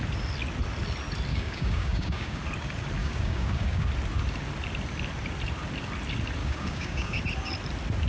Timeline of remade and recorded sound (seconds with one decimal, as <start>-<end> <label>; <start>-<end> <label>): 0.0-1.3 recorded; 1.3-2.4 remade; 2.4-3.0 recorded; 3.0-3.9 remade; 3.9-6.4 recorded; 6.4-7.2 remade; 7.2-8.1 recorded